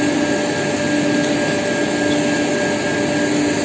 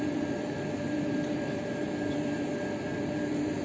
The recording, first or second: first